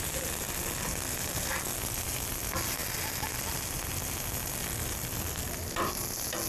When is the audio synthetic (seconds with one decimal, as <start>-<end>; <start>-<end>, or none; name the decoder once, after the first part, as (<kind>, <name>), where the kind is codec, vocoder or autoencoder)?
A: none